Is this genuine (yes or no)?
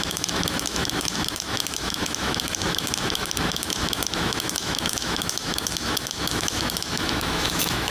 no